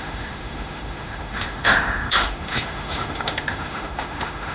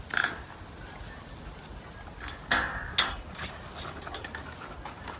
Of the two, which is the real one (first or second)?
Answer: second